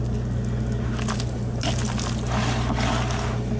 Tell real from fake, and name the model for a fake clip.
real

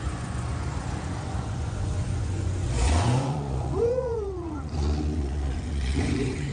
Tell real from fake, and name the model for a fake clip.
fake, vocoder, Vocos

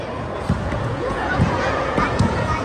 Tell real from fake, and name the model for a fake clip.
fake, vocoder, Vocos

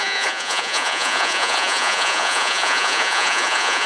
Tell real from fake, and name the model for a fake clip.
fake, vocoder, Vocos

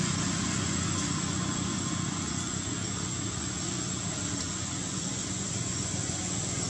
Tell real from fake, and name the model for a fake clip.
fake, vocoder, Vocos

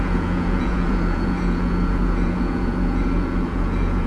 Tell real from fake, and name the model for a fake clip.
fake, vocoder, Vocos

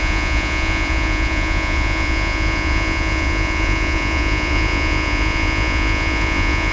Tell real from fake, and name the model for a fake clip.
fake, vocoder, Vocos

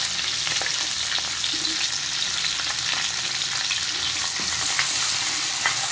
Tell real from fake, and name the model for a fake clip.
real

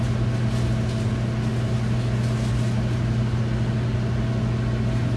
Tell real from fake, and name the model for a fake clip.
real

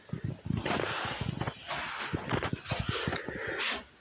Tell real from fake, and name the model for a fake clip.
real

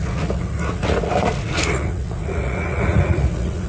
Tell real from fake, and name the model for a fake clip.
fake, vocoder, Vocos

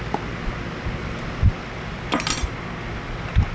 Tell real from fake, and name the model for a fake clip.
real